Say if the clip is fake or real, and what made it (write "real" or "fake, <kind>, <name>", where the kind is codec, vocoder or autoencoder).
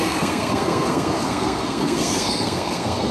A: fake, codec, SNAC